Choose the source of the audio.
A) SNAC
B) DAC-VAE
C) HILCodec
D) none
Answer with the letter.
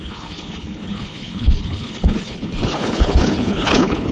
C